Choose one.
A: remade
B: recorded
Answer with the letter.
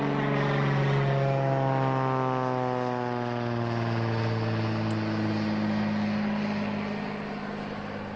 B